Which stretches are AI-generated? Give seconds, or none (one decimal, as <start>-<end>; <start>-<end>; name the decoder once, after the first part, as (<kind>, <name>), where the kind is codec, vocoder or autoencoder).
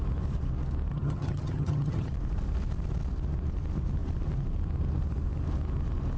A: 0.9-2.1 (vocoder, HiFi-GAN)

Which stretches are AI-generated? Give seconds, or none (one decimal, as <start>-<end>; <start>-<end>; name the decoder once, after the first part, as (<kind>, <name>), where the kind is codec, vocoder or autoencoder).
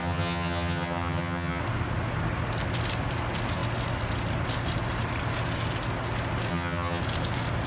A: 0.0-1.6 (vocoder, HiFi-GAN); 6.5-7.0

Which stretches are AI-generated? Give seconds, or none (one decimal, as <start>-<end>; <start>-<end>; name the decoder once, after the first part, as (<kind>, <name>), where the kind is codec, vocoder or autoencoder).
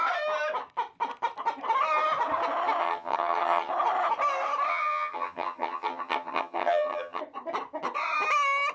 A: 2.8-3.7 (vocoder, HiFi-GAN); 4.7-7.2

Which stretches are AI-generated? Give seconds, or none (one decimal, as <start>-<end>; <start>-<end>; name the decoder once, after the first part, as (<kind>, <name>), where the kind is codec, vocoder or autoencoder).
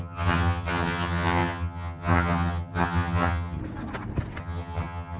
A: 0.0-3.6 (vocoder, HiFi-GAN); 4.4-5.2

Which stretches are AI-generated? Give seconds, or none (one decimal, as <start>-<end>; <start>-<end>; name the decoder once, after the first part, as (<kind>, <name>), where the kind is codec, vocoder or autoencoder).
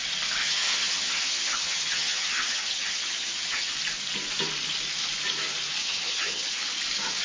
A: 0.4-3.7 (vocoder, HiFi-GAN); 5.8-6.5